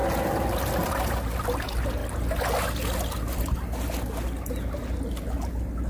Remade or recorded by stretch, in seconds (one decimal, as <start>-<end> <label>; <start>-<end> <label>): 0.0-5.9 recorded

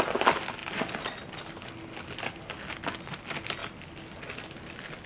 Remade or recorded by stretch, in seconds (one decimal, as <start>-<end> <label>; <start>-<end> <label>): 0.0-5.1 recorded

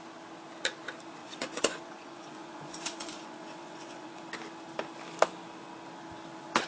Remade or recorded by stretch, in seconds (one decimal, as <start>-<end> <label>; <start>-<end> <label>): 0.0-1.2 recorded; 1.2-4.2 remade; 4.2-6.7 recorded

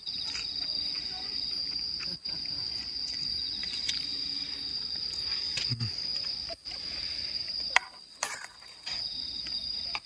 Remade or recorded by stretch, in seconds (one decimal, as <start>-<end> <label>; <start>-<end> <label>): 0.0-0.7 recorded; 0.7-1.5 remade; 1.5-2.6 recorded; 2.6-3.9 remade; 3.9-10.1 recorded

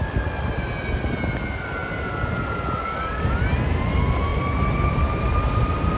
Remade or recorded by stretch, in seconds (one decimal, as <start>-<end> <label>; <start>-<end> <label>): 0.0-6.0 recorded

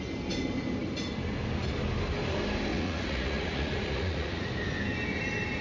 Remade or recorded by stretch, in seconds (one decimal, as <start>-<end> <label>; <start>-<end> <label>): 0.0-2.7 recorded; 2.7-4.5 remade; 4.5-5.6 recorded